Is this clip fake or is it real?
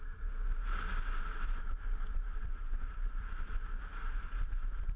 fake